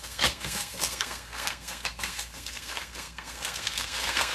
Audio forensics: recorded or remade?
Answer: remade